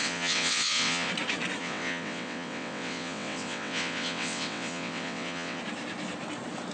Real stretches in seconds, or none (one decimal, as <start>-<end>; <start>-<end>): 1.1-1.6; 5.6-6.7